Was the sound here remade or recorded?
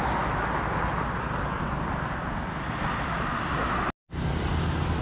recorded